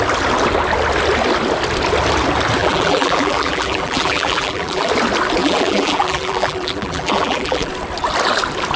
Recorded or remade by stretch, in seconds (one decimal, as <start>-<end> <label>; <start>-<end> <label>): 0.0-2.6 recorded; 2.6-4.9 remade; 4.9-5.4 recorded; 5.4-7.7 remade; 7.7-8.8 recorded

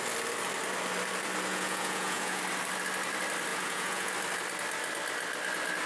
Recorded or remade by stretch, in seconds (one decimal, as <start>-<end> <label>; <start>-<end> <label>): 0.0-1.5 recorded; 1.5-2.4 remade; 2.4-3.5 recorded; 3.5-4.1 remade; 4.1-5.9 recorded

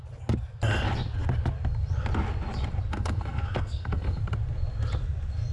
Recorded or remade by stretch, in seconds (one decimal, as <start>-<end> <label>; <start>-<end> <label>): 0.0-2.9 recorded; 2.9-4.2 remade; 4.2-5.5 recorded

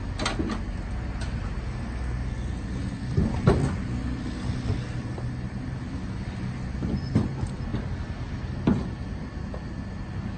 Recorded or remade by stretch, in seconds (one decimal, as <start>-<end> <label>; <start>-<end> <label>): 0.0-10.4 recorded

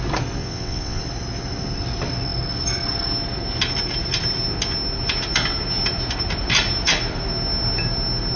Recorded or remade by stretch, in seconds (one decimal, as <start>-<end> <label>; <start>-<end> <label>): 0.0-0.4 recorded; 0.4-1.0 remade; 1.0-8.4 recorded

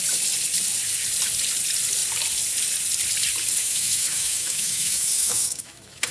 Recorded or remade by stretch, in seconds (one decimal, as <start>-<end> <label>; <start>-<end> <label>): 0.0-3.6 recorded; 3.6-6.1 remade

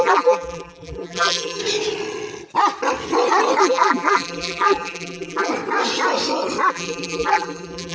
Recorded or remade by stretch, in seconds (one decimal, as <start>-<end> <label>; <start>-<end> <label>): 0.0-1.6 remade; 1.6-3.6 recorded; 3.6-5.5 remade; 5.5-6.7 recorded; 6.7-7.9 remade